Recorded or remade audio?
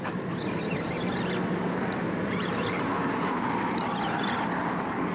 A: recorded